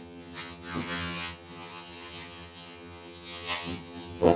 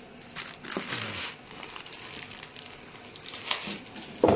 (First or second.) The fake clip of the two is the first